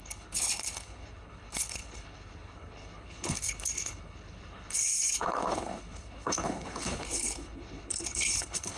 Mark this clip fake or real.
fake